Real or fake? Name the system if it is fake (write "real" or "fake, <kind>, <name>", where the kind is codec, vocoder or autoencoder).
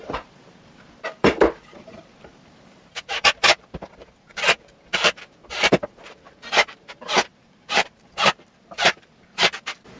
fake, vocoder, BigVGAN v2